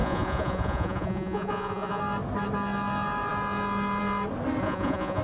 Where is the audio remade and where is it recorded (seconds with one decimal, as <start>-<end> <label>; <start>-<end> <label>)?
0.0-2.0 remade; 2.0-4.6 recorded; 4.6-5.2 remade